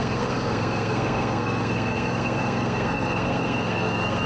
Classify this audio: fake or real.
fake